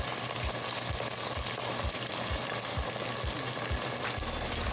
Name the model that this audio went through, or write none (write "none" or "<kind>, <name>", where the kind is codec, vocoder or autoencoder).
none